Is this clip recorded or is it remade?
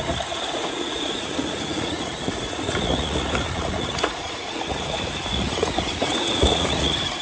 remade